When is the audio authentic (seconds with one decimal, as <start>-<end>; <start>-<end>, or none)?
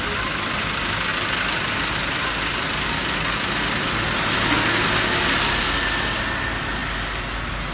0.0-7.7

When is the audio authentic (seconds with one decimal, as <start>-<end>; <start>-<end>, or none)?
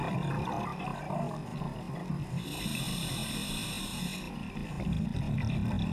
0.8-1.4; 3.3-5.9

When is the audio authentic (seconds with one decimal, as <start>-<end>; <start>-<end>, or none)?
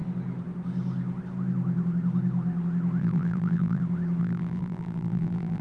0.0-3.0; 3.8-4.2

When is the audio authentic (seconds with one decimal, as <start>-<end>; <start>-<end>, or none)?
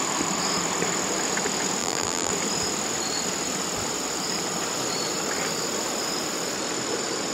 0.0-1.8; 2.3-7.3